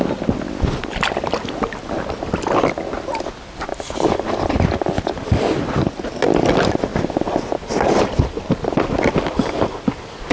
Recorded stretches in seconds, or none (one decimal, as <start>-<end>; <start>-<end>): 0.0-10.3